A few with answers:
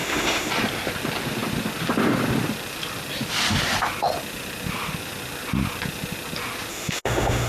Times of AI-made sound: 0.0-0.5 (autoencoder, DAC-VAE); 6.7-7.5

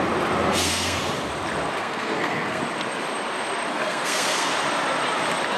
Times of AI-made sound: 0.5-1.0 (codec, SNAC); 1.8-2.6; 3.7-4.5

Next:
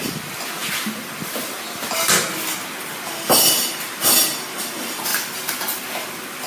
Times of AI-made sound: none

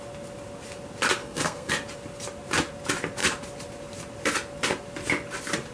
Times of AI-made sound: 1.2-1.7 (codec, SNAC)

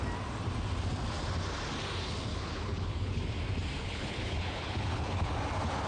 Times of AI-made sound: 2.3-3.2 (codec, HILCodec); 3.8-5.3

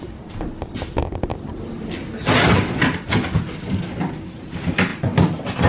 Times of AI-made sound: none